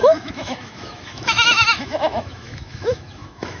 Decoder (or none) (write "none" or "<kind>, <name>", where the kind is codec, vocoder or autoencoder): autoencoder, DAC-VAE